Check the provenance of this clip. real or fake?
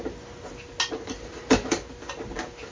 real